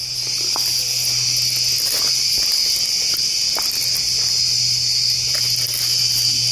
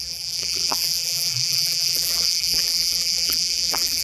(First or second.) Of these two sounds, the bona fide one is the first